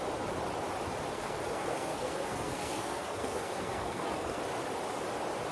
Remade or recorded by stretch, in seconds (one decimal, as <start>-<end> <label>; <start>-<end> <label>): 0.0-1.1 recorded; 1.1-4.4 remade; 4.4-5.5 recorded